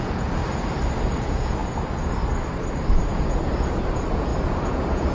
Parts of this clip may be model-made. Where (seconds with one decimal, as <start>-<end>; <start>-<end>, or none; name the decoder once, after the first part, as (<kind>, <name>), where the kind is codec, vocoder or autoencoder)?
0.0-0.4 (vocoder, Vocos); 1.2-1.6; 3.1-5.1